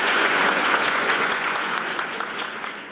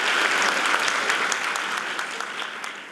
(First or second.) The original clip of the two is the second